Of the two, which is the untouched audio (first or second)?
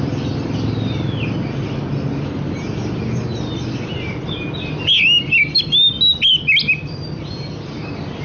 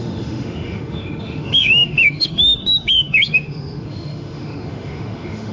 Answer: first